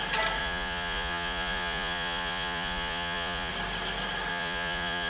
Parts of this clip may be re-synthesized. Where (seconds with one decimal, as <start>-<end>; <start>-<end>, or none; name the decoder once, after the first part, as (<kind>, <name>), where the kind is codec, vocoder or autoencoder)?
0.4-3.5 (vocoder, Vocos); 4.3-5.1